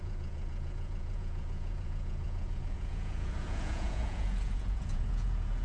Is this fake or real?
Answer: fake